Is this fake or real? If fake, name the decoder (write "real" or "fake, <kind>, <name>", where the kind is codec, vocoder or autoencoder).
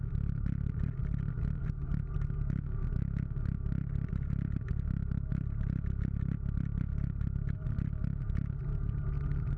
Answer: fake, vocoder, BigVGAN v2